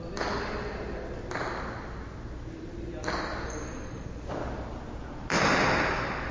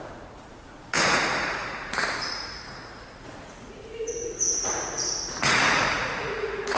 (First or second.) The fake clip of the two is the second